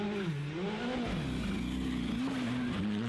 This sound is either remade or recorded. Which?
recorded